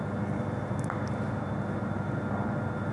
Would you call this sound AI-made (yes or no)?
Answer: no